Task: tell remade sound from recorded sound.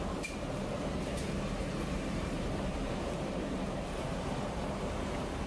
remade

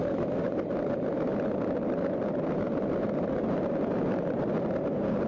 remade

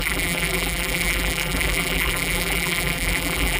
remade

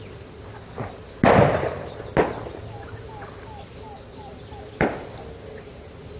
recorded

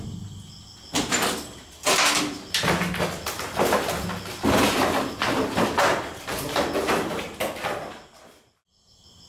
recorded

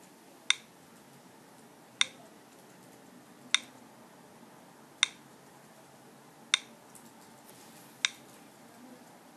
recorded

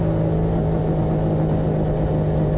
recorded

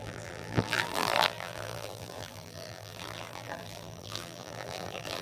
remade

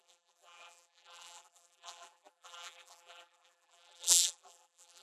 remade